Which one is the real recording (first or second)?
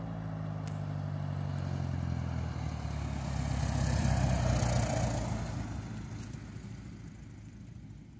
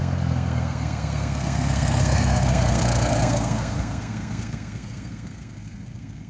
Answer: first